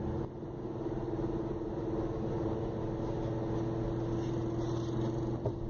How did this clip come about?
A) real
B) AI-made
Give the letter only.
A